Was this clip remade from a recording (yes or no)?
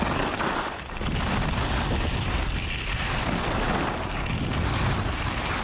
no